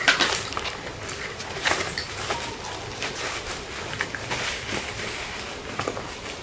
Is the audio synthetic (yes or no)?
no